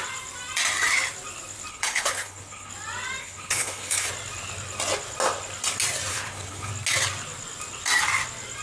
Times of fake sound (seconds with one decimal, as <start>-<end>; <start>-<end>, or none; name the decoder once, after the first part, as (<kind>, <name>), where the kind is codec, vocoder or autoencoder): 1.7-2.7 (codec, HILCodec); 3.2-4.1; 6.1-6.7